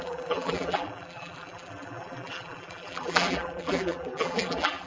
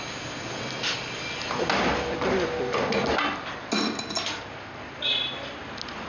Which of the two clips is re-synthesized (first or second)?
first